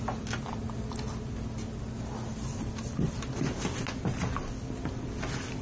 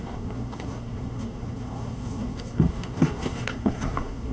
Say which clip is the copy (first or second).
second